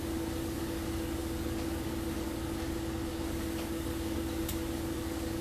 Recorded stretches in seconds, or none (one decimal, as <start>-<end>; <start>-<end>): none